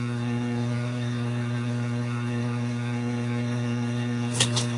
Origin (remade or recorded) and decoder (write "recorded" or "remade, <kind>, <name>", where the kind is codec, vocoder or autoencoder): remade, codec, SNAC